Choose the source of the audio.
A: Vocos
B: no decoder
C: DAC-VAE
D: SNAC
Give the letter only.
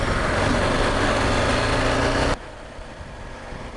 B